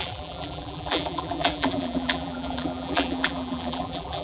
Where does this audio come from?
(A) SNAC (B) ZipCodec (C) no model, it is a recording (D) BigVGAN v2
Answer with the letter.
D